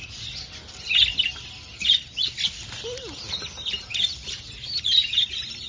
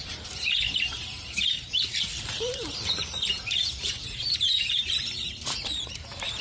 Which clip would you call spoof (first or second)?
second